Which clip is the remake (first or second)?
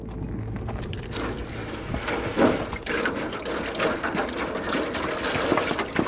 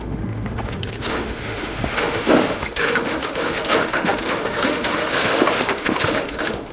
second